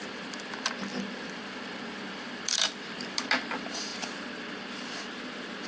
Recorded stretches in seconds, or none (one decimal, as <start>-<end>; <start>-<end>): 3.9-4.7